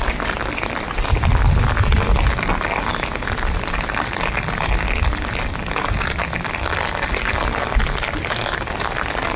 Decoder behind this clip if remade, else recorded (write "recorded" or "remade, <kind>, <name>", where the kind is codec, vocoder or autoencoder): recorded